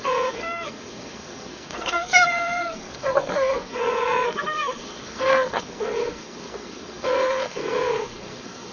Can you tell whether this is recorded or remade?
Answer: remade